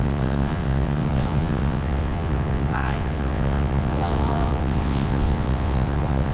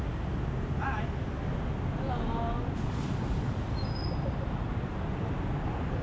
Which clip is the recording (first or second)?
second